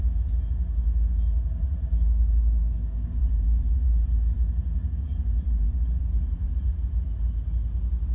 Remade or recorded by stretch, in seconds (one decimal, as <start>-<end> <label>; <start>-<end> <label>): 0.0-3.2 recorded; 3.2-6.5 remade; 6.5-8.1 recorded